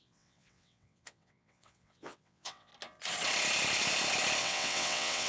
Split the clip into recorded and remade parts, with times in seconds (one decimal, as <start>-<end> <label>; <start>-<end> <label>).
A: 0.0-2.7 remade; 2.7-4.4 recorded; 4.4-5.3 remade